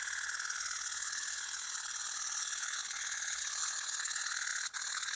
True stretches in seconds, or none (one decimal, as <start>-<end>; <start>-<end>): none